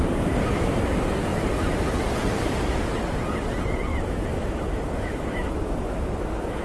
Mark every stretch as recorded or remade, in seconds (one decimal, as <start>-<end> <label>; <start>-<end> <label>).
0.0-3.9 recorded; 3.9-6.6 remade